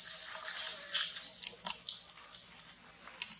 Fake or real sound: real